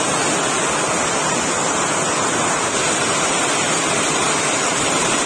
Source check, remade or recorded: recorded